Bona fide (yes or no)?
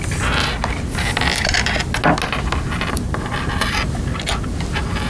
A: yes